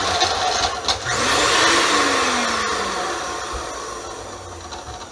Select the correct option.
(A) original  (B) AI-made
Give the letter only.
A